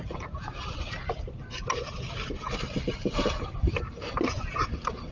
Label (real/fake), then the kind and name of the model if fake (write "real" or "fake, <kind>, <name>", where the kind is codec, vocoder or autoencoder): real